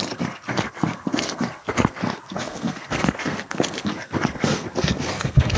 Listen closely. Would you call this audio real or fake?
fake